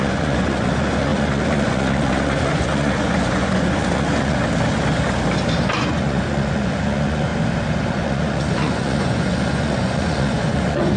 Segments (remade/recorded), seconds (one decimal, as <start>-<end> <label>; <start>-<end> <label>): 0.0-4.4 remade; 4.4-5.7 recorded; 5.7-7.3 remade; 7.3-7.9 recorded; 7.9-11.0 remade